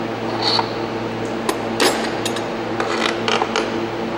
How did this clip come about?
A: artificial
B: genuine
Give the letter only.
B